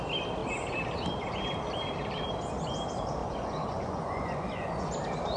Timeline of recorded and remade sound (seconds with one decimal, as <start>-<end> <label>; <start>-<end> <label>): 0.0-3.2 recorded; 3.2-4.9 remade; 4.9-5.4 recorded